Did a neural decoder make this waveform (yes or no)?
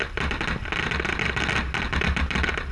no